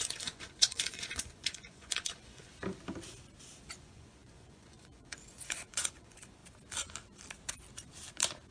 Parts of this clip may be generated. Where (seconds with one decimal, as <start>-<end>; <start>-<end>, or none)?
0.0-2.5; 3.8-6.4